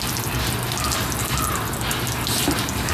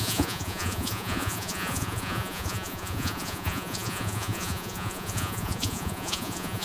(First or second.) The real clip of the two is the first